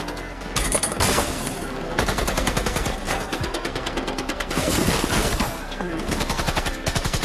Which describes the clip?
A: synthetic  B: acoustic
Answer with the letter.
A